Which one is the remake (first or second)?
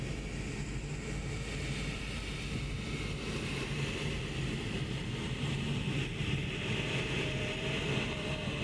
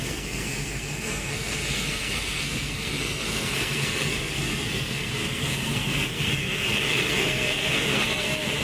second